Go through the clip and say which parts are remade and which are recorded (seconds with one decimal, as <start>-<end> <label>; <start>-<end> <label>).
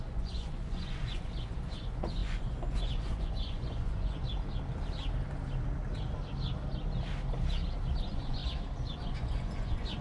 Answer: 0.0-4.3 remade; 4.3-8.0 recorded; 8.0-8.4 remade; 8.4-9.0 recorded; 9.0-10.0 remade